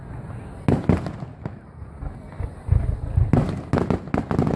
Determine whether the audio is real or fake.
real